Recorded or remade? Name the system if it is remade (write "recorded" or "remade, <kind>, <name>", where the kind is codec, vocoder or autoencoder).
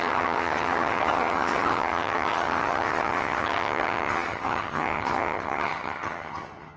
remade, vocoder, HiFi-GAN